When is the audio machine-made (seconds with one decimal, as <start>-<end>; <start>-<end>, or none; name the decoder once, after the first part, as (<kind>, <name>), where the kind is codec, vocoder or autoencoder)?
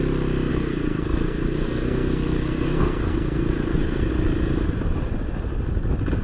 0.5-4.1 (codec, SNAC)